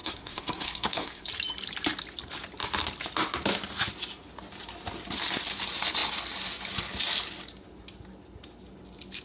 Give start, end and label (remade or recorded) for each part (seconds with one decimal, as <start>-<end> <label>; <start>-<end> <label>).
0.0-1.3 remade; 1.3-9.2 recorded